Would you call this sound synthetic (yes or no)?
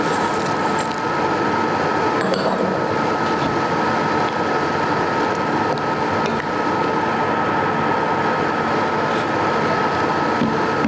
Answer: no